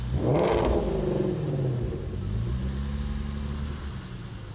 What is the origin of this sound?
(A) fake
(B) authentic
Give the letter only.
B